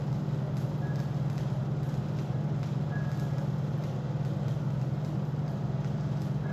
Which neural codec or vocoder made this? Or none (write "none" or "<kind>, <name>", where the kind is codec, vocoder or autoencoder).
none